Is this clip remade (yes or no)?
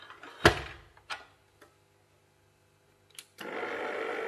no